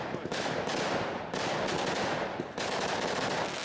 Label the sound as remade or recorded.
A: recorded